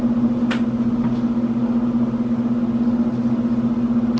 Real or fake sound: real